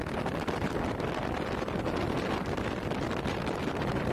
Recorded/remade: recorded